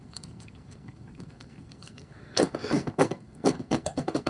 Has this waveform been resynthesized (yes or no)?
yes